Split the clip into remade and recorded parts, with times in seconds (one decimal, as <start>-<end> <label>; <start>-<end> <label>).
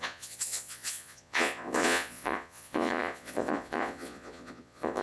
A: 0.0-5.0 remade